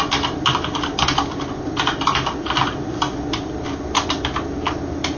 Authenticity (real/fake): real